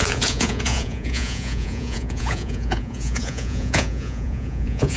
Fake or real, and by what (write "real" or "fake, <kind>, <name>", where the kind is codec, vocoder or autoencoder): fake, vocoder, Vocos